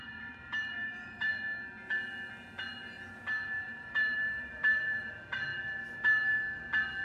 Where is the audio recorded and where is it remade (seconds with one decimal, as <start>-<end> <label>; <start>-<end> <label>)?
0.0-1.3 remade; 1.3-3.7 recorded; 3.7-5.5 remade; 5.5-7.0 recorded